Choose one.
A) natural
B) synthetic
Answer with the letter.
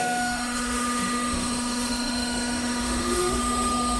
B